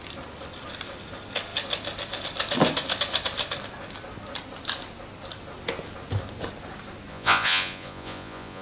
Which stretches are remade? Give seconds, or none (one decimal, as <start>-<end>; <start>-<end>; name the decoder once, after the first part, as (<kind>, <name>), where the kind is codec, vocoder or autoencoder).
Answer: 7.1-8.6 (vocoder, Vocos)